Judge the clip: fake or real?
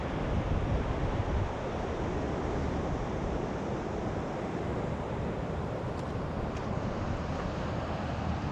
fake